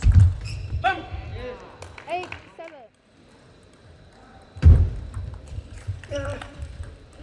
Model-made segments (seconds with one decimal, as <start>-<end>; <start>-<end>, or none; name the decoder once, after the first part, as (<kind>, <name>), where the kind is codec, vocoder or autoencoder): 0.0-1.3 (vocoder, BigVGAN v2); 3.3-7.2